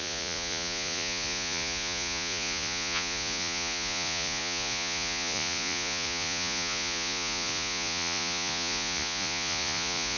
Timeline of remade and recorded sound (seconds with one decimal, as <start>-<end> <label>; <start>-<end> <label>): 0.0-10.2 remade